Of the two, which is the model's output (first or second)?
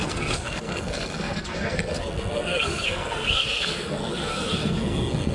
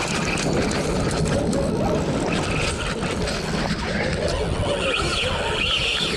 first